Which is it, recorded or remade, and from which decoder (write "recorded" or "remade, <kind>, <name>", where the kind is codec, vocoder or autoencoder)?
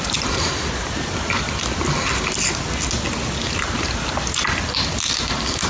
recorded